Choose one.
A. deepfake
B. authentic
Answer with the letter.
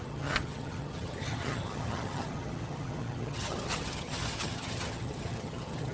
A